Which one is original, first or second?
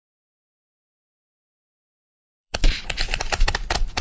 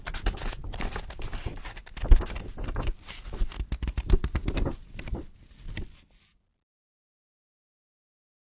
second